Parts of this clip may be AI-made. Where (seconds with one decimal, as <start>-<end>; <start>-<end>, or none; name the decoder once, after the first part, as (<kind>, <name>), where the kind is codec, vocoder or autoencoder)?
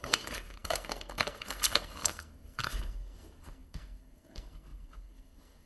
0.0-5.7 (codec, SNAC)